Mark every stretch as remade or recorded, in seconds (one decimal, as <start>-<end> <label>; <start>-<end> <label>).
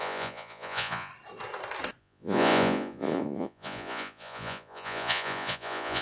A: 0.0-1.1 remade; 1.1-2.0 recorded; 2.0-6.0 remade